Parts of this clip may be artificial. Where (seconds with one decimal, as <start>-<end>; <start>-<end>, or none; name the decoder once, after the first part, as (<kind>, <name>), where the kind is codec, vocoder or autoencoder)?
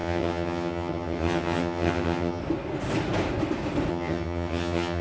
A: 0.0-2.4 (vocoder, HiFi-GAN); 3.9-5.0